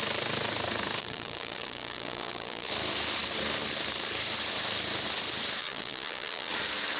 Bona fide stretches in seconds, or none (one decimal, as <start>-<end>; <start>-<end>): 0.0-1.0; 2.7-5.6; 6.5-7.0

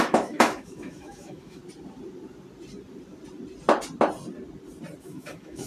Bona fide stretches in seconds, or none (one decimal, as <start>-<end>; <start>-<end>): 1.6-5.0

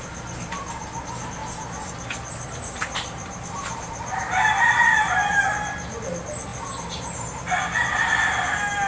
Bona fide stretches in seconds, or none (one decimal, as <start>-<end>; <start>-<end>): 0.0-1.4; 5.4-6.5; 7.4-8.9

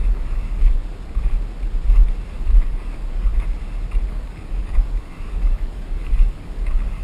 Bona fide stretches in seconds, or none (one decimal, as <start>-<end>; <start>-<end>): 0.8-2.4; 3.3-4.1